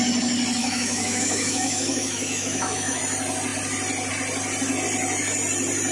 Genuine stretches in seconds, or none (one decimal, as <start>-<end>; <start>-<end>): 0.0-0.6; 3.0-5.9